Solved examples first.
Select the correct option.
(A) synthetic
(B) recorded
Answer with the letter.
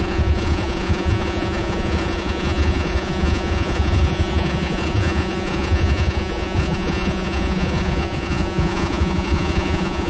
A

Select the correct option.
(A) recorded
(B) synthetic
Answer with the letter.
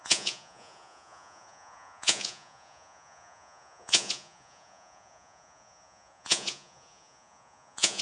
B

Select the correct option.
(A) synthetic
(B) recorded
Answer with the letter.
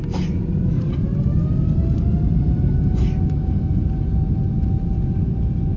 B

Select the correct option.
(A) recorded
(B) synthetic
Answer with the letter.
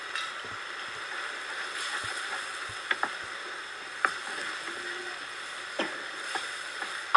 A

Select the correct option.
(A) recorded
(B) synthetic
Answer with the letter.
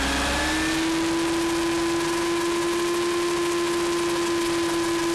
A